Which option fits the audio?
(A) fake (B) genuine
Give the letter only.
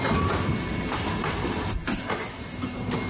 B